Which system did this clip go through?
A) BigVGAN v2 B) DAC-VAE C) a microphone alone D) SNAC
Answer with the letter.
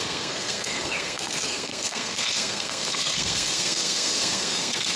D